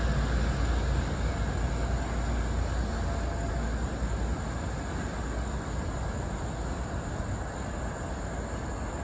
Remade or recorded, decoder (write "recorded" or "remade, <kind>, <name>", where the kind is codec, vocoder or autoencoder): recorded